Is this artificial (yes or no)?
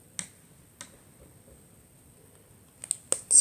no